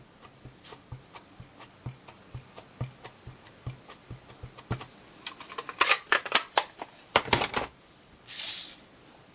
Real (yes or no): yes